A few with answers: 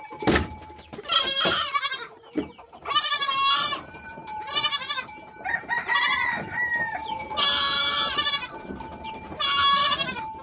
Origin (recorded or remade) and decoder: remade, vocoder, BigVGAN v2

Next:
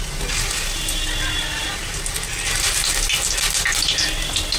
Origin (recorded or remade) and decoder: recorded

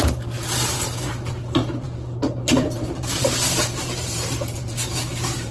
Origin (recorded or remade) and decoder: remade, vocoder, BigVGAN v2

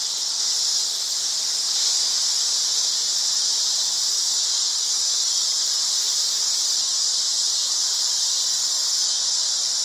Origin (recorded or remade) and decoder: remade, vocoder, BigVGAN v2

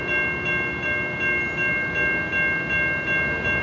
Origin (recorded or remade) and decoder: recorded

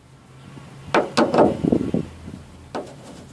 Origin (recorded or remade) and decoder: recorded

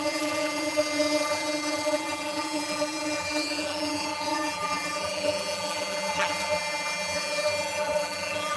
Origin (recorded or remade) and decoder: remade, vocoder, BigVGAN v2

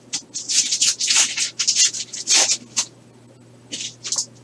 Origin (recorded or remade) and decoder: recorded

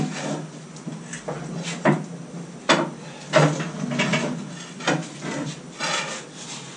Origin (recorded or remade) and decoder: recorded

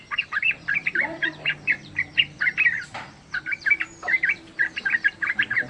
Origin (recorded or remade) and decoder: remade, vocoder, BigVGAN v2